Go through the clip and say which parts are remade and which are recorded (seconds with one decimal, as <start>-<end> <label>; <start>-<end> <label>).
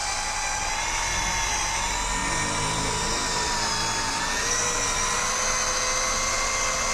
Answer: 0.0-6.9 recorded